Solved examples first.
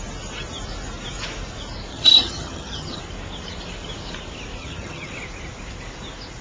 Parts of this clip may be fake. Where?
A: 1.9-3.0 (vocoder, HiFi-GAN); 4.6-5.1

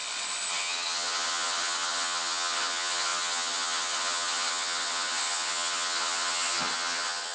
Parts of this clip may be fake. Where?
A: 0.5-7.3 (vocoder, HiFi-GAN)